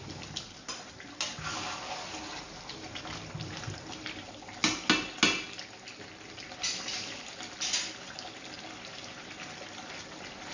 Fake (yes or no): no